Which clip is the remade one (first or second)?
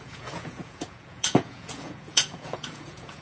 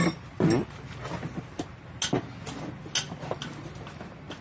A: first